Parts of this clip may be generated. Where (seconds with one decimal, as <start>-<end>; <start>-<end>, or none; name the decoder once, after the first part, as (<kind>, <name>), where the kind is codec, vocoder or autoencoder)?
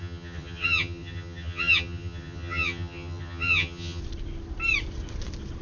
0.0-4.0 (vocoder, HiFi-GAN)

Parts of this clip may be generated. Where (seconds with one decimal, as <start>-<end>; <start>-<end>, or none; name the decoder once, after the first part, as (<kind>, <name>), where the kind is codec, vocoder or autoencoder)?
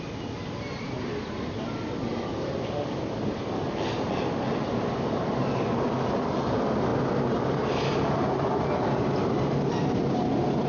none